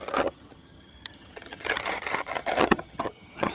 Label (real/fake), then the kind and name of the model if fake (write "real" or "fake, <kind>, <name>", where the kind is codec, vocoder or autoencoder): fake, vocoder, HiFi-GAN